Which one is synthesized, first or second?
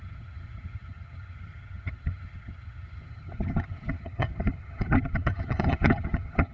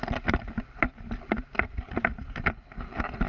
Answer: first